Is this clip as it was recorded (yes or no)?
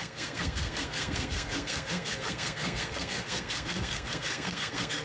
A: no